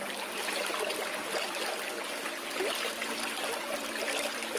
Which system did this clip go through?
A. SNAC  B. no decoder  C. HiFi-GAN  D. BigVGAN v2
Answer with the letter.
B